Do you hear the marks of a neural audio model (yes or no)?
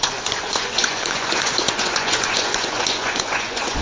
yes